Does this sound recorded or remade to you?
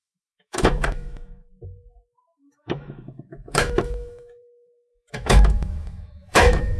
remade